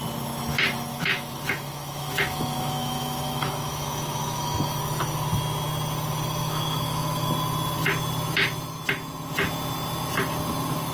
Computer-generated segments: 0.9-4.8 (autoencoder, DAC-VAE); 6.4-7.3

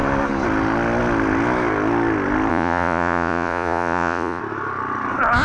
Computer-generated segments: 2.5-4.4 (vocoder, Vocos)